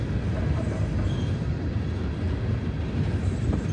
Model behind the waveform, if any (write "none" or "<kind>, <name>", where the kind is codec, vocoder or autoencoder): none